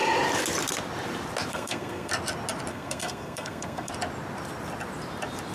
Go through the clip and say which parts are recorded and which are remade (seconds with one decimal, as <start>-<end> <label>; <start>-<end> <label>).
0.0-1.5 recorded; 1.5-2.1 remade; 2.1-2.7 recorded; 2.7-3.9 remade; 3.9-5.5 recorded